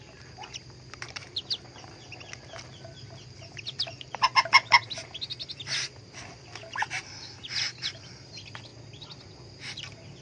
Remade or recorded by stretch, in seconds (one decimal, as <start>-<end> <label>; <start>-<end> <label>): 0.0-10.2 recorded